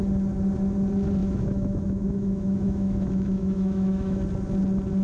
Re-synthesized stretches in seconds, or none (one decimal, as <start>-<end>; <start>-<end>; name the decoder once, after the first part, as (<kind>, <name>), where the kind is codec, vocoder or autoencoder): 1.2-4.2 (autoencoder, DAC-VAE)